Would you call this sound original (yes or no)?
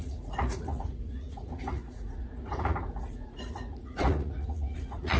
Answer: no